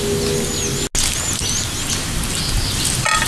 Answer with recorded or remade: recorded